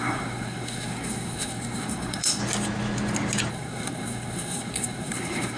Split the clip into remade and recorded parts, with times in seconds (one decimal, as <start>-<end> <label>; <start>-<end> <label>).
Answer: 0.0-2.4 remade; 2.4-3.5 recorded; 3.5-5.6 remade